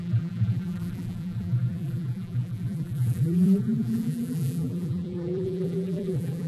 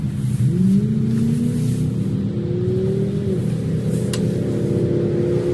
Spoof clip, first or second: first